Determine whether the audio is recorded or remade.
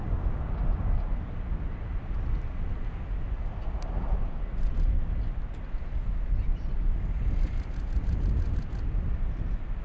recorded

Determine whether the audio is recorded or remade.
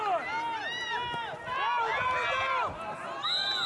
recorded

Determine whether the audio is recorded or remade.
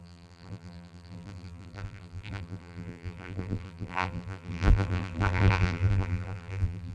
remade